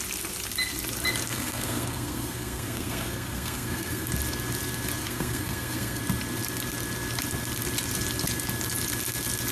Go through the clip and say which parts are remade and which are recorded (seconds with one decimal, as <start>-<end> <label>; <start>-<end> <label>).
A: 0.0-1.3 recorded; 1.3-4.1 remade; 4.1-5.0 recorded; 5.0-6.0 remade; 6.0-9.5 recorded